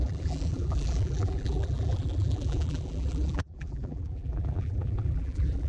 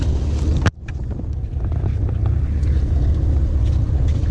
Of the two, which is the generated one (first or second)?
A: first